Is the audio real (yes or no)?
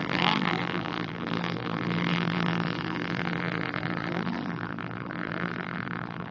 no